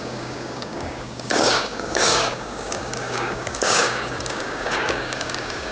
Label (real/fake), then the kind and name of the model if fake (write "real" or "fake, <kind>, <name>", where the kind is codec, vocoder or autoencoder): fake, codec, DAC